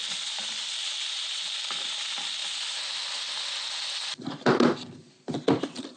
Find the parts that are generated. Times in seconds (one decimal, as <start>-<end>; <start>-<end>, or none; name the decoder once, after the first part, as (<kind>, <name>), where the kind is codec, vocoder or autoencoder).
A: none

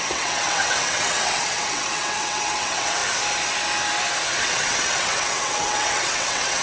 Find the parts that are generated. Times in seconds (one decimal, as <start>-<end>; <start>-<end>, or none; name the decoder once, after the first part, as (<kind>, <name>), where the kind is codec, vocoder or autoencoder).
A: 0.0-3.0 (vocoder, WaveNeXt); 4.4-6.6

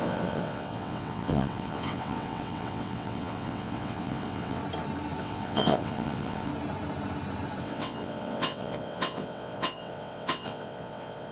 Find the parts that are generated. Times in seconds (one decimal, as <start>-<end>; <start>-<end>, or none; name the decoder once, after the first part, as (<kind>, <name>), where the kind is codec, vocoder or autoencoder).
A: 0.0-4.6 (vocoder, WaveNeXt); 5.2-6.5; 7.6-11.3

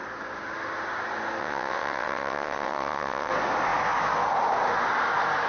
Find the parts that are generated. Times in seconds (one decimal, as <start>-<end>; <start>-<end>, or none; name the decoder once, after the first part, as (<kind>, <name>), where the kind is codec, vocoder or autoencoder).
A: 1.4-3.3 (vocoder, WaveNeXt)

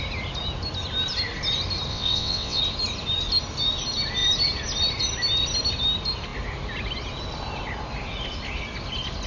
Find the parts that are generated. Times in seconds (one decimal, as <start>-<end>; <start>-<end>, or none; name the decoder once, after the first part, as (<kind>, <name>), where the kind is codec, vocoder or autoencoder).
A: 1.9-2.6 (vocoder, WaveNeXt)

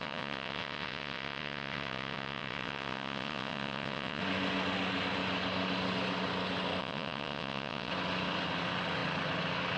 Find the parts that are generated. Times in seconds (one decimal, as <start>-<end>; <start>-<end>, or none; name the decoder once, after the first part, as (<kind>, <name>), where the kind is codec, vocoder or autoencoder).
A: 0.0-4.2 (vocoder, WaveNeXt); 6.8-7.9

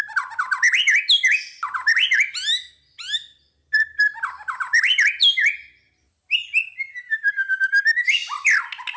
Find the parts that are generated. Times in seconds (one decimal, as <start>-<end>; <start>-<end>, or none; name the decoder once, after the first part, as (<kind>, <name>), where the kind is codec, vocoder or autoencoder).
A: none

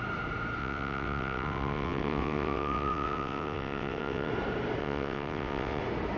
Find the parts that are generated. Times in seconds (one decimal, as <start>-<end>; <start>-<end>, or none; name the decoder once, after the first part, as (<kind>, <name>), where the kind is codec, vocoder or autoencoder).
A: 0.6-4.3 (vocoder, WaveNeXt); 4.8-5.8